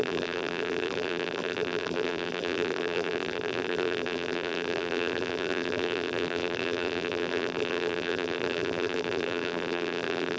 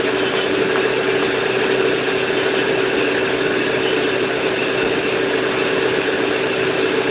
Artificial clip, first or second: first